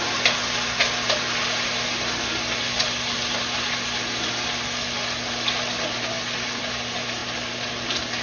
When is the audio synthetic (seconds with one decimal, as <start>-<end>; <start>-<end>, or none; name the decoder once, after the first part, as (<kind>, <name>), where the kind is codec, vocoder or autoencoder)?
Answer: none